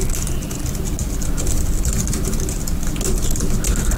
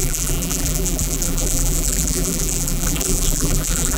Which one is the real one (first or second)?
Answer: first